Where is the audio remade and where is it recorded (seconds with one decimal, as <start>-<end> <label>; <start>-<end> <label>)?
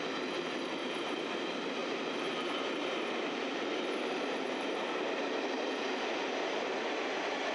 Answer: 0.0-0.8 recorded; 0.8-1.3 remade; 1.3-1.8 recorded; 1.8-6.3 remade; 6.3-7.5 recorded